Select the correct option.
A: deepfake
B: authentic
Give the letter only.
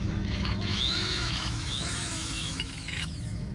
A